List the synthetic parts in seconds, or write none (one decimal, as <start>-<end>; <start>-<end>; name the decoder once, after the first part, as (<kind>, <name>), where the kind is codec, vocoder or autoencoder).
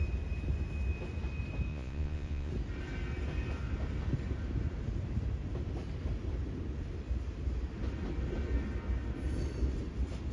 1.7-2.5 (vocoder, Vocos)